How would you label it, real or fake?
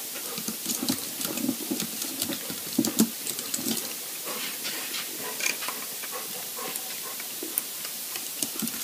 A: real